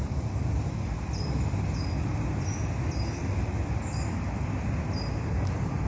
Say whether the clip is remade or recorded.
recorded